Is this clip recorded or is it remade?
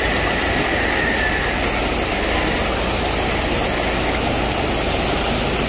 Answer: recorded